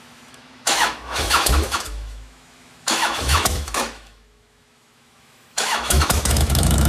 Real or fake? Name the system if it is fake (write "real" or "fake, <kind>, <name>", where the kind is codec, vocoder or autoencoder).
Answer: fake, autoencoder, DAC-VAE